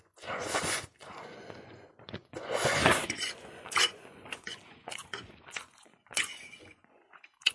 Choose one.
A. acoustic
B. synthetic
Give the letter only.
B